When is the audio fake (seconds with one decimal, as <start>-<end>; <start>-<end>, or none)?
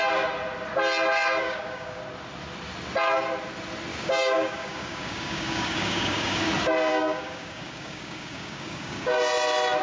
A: 1.4-2.0; 3.9-6.4; 6.9-9.2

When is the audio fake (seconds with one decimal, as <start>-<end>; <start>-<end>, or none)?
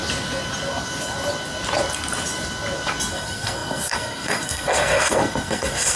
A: 3.1-6.0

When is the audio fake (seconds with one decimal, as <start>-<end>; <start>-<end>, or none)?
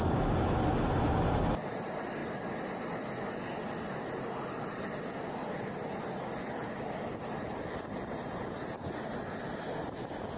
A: none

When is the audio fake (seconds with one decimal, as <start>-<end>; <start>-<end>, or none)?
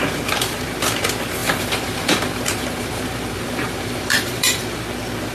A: 1.4-4.6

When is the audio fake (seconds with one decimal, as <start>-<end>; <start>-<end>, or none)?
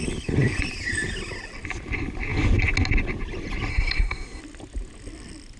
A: 3.7-4.4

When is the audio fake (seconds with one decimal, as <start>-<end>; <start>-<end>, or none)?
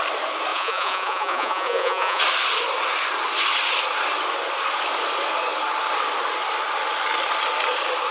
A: 0.5-2.2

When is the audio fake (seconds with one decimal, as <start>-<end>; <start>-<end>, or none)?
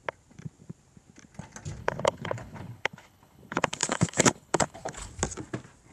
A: 1.8-5.1